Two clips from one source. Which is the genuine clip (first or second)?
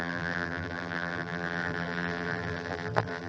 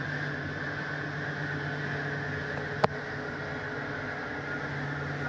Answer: second